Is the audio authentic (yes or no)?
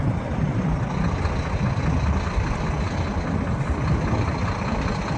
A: yes